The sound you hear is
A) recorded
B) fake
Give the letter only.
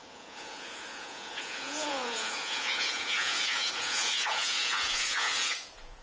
B